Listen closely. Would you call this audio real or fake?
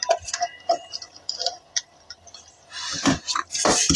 fake